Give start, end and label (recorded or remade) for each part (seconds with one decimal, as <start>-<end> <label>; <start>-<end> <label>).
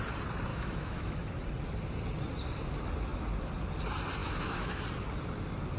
0.0-0.5 recorded; 0.5-1.1 remade; 1.1-4.2 recorded; 4.2-4.7 remade; 4.7-5.8 recorded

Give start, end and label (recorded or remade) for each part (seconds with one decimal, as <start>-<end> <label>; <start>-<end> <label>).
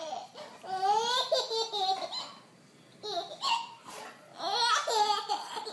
0.0-0.5 remade; 0.5-3.9 recorded; 3.9-4.3 remade; 4.3-5.3 recorded; 5.3-5.7 remade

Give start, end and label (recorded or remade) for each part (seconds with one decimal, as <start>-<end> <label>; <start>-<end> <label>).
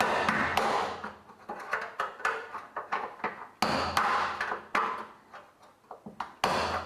0.0-0.5 recorded; 0.5-3.2 remade; 3.2-6.9 recorded